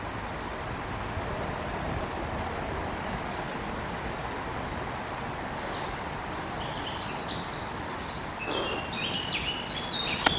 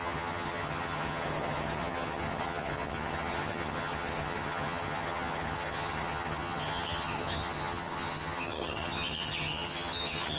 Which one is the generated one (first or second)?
second